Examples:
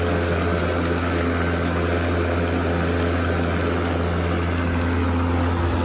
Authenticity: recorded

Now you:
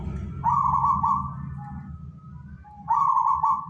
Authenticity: recorded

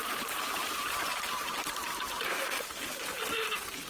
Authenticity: remade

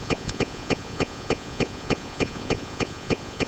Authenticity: remade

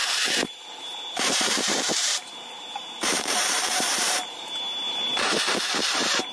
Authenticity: remade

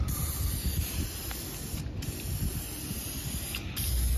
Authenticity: recorded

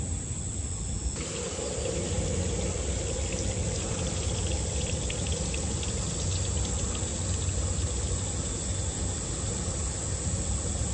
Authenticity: recorded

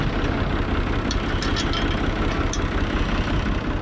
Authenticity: recorded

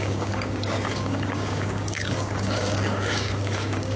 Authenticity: remade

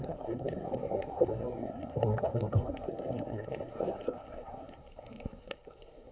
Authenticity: remade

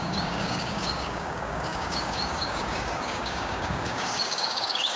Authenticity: remade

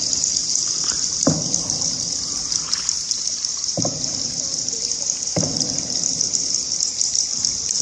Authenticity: recorded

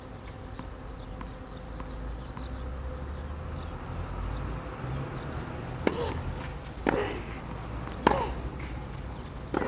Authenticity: recorded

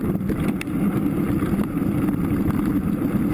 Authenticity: recorded